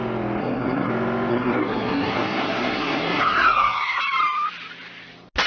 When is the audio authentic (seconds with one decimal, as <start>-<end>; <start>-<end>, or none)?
0.0-0.4; 0.9-1.3; 4.0-5.5